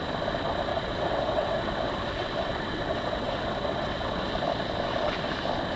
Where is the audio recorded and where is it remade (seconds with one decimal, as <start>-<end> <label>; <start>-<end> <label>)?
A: 0.0-0.7 recorded; 0.7-4.2 remade; 4.2-5.8 recorded